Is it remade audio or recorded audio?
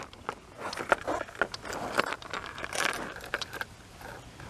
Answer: recorded